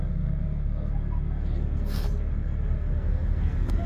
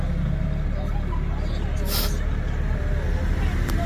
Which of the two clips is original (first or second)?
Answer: second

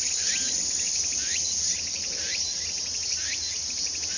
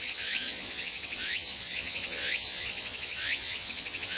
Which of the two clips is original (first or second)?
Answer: first